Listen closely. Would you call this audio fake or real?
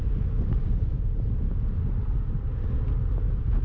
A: real